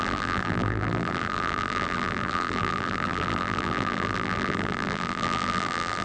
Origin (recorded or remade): remade